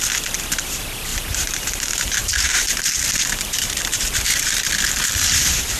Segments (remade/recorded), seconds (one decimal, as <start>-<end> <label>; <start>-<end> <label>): 0.0-1.1 recorded; 1.1-4.6 remade; 4.6-5.8 recorded